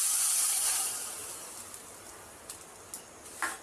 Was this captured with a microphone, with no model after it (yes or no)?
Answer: yes